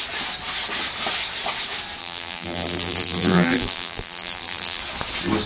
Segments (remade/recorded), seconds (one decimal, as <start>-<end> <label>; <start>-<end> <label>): 0.0-2.0 recorded; 2.0-4.8 remade; 4.8-5.5 recorded